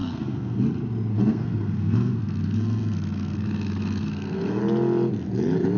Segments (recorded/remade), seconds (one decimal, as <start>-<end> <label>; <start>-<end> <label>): 0.0-0.6 remade; 0.6-1.1 recorded; 1.1-4.6 remade; 4.6-5.8 recorded